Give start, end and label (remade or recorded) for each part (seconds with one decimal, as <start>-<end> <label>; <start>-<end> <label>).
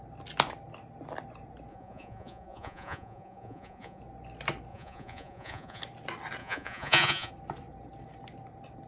0.0-1.7 recorded; 1.7-4.0 remade; 4.0-4.7 recorded; 4.7-5.8 remade; 5.8-6.4 recorded; 6.4-7.3 remade; 7.3-8.9 recorded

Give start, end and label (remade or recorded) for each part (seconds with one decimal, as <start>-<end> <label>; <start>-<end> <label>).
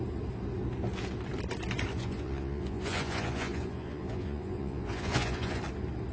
0.0-1.9 recorded; 1.9-5.6 remade; 5.6-6.1 recorded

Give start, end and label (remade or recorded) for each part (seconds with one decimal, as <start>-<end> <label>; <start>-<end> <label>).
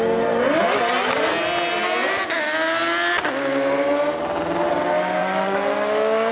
0.0-6.3 recorded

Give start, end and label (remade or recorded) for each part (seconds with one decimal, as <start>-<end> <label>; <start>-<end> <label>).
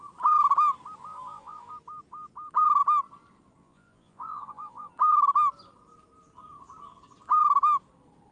0.0-1.1 recorded; 1.1-1.7 remade; 1.7-3.6 recorded; 3.6-4.9 remade; 4.9-8.3 recorded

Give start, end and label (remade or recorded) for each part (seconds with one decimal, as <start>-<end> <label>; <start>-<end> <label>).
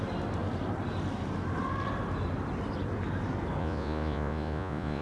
0.0-3.6 recorded; 3.6-5.0 remade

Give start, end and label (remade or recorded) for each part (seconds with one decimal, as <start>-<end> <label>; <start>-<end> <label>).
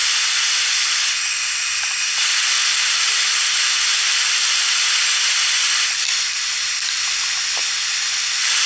0.0-8.7 recorded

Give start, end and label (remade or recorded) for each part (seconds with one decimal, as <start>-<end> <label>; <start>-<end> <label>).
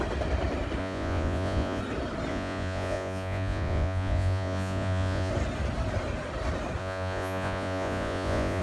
0.0-0.8 recorded; 0.8-1.8 remade; 1.8-2.3 recorded; 2.3-5.3 remade; 5.3-6.8 recorded; 6.8-8.6 remade